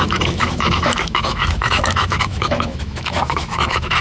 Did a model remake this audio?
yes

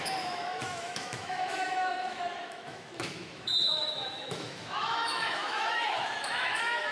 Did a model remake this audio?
yes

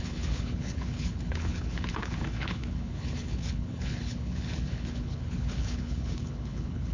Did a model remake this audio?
yes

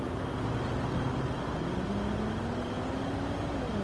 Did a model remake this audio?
no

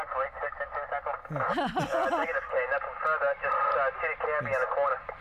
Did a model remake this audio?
no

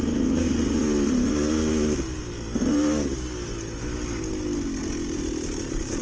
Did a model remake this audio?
no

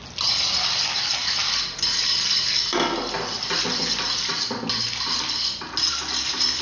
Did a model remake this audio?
no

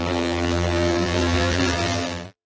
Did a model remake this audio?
yes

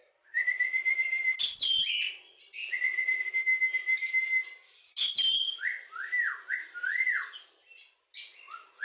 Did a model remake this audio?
no